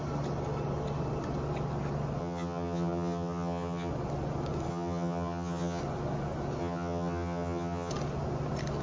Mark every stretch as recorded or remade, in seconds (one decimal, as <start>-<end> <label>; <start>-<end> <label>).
0.0-2.2 recorded; 2.2-3.9 remade; 3.9-4.7 recorded; 4.7-5.8 remade; 5.8-6.6 recorded; 6.6-7.9 remade; 7.9-8.8 recorded